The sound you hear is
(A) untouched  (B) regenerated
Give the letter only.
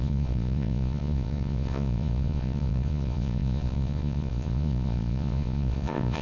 B